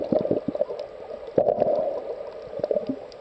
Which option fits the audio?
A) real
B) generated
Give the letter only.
A